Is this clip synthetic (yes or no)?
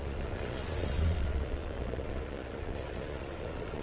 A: yes